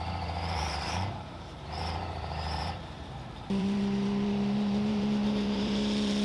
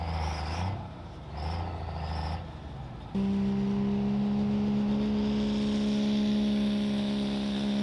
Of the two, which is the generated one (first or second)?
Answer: first